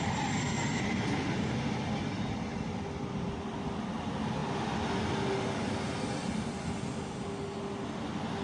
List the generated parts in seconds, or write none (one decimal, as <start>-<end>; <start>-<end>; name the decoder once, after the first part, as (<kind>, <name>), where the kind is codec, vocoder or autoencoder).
none